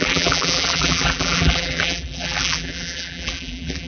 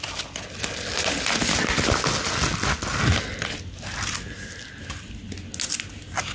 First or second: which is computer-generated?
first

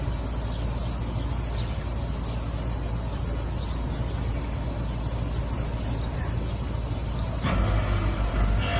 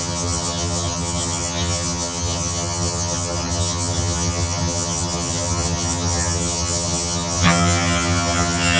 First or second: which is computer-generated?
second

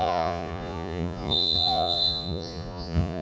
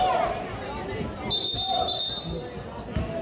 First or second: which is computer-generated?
first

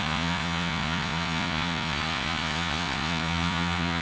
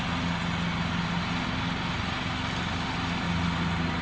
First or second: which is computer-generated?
first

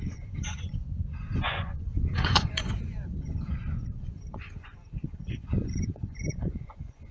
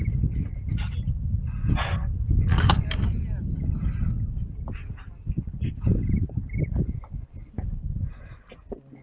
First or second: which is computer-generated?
first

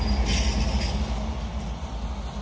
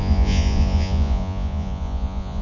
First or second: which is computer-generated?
second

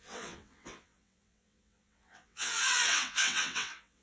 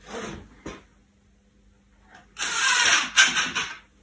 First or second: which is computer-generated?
first